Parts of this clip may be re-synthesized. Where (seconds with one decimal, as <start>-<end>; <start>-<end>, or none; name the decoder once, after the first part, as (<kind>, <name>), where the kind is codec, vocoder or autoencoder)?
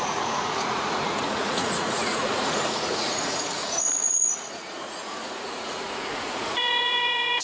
0.0-7.4 (vocoder, Vocos)